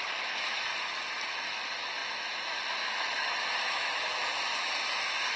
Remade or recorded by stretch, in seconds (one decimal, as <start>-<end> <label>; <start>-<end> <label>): 0.0-0.7 remade; 0.7-1.3 recorded; 1.3-5.4 remade

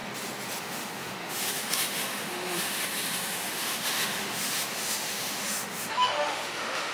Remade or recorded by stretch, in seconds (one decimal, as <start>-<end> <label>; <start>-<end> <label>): 0.0-0.6 recorded; 0.6-6.9 remade

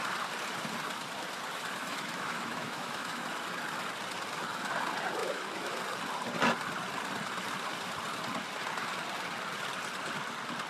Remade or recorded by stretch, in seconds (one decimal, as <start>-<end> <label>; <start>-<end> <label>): 0.0-1.8 recorded; 1.8-3.2 remade; 3.2-5.2 recorded; 5.2-5.8 remade; 5.8-10.7 recorded